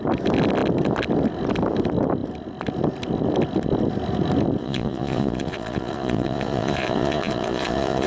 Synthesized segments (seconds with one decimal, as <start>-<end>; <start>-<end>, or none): 4.6-8.1